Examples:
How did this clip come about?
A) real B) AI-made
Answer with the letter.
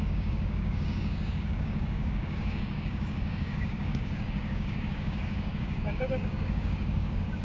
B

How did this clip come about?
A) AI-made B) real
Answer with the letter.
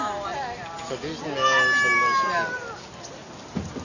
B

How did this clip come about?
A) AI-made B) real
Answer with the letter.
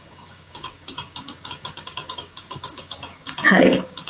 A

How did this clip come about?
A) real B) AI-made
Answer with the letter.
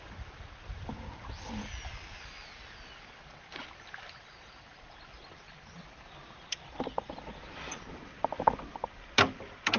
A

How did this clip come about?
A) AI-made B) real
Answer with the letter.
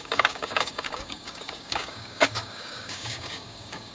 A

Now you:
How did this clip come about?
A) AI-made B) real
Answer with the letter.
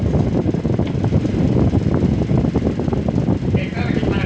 B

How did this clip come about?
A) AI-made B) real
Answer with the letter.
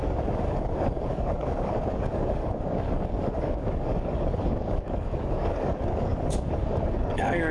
A